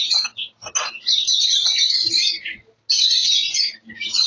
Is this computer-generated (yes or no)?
no